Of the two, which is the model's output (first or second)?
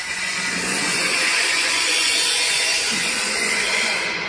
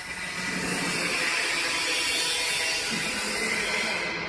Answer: first